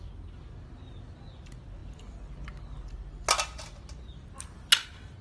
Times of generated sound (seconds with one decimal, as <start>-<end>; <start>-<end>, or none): none

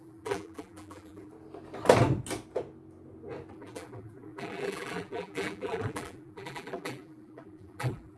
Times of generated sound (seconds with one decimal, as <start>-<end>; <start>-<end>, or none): 0.0-1.3; 3.5-8.2

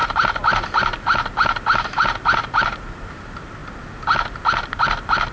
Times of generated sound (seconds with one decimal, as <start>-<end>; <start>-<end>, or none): 0.0-3.2

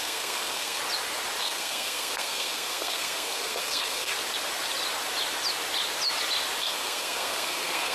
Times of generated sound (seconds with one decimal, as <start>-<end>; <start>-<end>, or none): 0.0-0.8; 1.4-4.1; 6.6-7.9